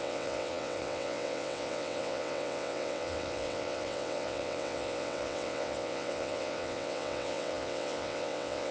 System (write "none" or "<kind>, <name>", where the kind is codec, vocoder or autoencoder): vocoder, WaveNeXt